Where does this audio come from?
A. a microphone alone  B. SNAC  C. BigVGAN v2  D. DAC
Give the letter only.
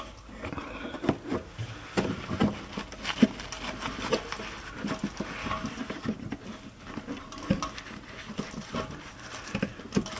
A